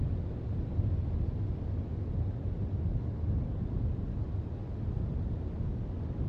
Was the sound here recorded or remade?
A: recorded